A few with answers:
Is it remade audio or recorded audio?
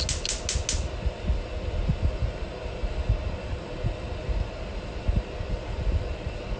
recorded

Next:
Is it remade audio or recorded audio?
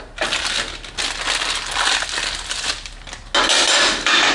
recorded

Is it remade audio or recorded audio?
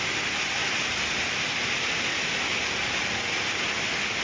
recorded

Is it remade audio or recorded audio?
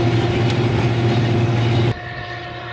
recorded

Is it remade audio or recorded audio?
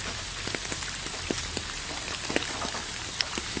remade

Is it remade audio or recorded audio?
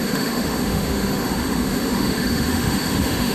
remade